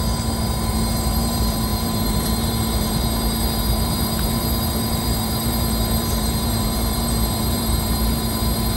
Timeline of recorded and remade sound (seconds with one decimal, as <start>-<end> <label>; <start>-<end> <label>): 0.0-8.8 remade